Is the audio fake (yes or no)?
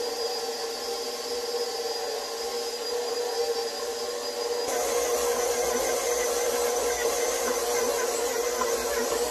no